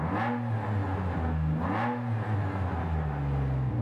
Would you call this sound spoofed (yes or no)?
no